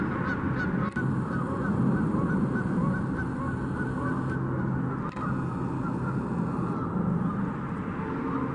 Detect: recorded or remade recorded